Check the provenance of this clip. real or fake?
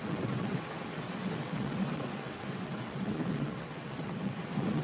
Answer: fake